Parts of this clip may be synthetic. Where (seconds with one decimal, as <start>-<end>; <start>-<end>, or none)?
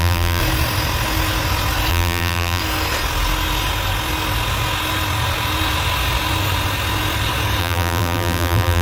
0.0-0.4; 1.9-2.6; 7.6-8.8